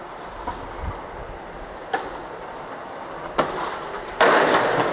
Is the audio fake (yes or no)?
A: no